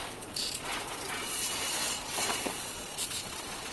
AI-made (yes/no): yes